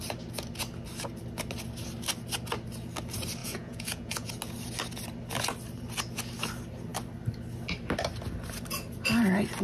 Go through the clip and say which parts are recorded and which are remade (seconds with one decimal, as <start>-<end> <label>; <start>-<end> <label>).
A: 0.0-3.4 recorded; 3.4-4.3 remade; 4.3-9.6 recorded